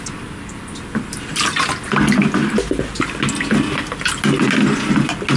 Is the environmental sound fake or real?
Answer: real